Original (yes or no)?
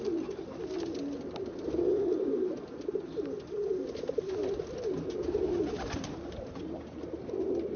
yes